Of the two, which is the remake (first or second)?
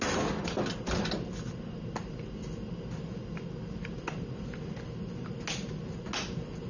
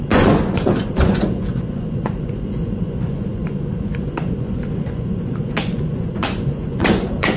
second